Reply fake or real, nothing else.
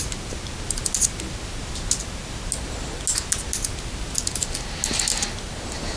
real